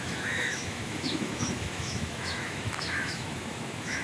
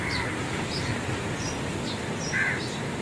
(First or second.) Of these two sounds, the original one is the second